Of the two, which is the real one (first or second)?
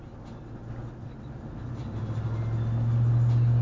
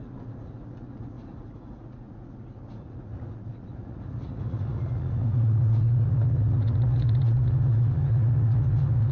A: first